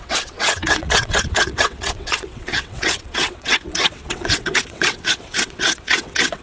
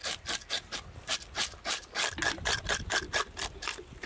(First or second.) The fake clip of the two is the first